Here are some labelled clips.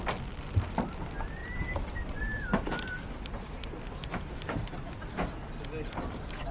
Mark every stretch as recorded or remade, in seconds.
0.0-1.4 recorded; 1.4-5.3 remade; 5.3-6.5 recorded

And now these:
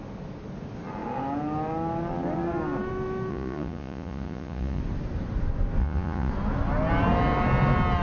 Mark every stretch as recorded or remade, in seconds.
0.0-3.3 recorded; 3.3-4.8 remade; 4.8-5.8 recorded; 5.8-6.3 remade; 6.3-8.0 recorded